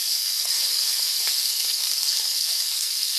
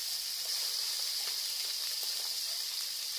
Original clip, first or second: second